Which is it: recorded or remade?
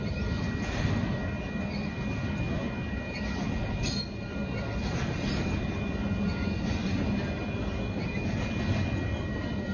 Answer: recorded